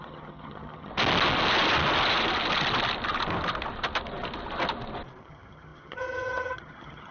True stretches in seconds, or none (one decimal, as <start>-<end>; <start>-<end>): 0.9-5.2